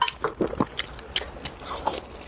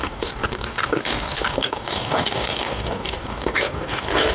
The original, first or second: first